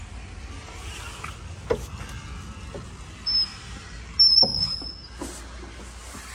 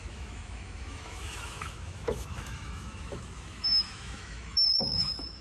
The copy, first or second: second